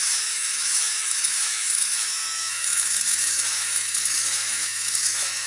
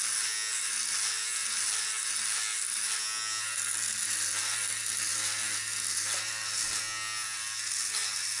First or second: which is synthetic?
first